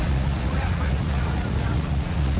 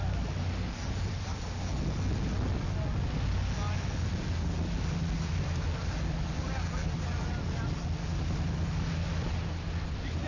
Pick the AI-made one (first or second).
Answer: first